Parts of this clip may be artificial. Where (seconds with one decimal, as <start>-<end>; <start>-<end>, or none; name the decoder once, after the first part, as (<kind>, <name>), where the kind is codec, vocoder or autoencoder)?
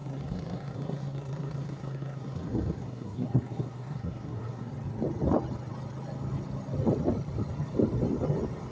0.0-4.7 (codec, SNAC)